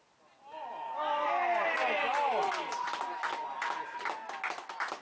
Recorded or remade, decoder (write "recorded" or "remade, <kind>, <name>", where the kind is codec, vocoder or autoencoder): recorded